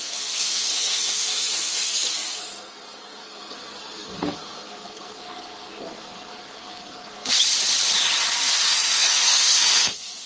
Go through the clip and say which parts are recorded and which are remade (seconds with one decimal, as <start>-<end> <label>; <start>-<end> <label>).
0.0-7.3 remade; 7.3-8.4 recorded; 8.4-10.3 remade